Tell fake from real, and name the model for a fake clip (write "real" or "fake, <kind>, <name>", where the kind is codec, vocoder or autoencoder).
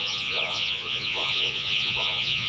fake, vocoder, Vocos